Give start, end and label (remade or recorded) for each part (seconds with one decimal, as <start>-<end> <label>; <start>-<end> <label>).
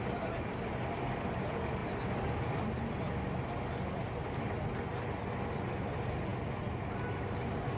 0.0-7.8 recorded